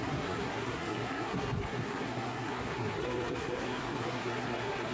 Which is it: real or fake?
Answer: fake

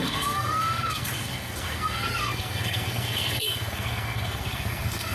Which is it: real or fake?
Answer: fake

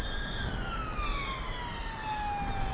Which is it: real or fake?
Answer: real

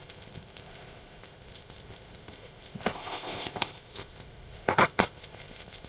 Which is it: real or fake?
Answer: fake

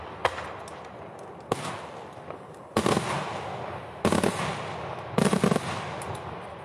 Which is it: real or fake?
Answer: real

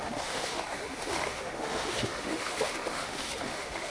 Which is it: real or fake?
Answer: fake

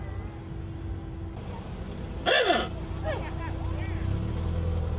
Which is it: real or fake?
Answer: real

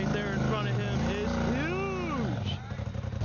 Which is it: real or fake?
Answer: real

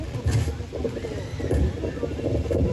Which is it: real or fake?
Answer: real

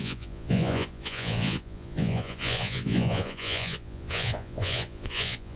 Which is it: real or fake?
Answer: fake